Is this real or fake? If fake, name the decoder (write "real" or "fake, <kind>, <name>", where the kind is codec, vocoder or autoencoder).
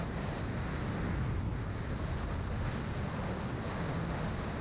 real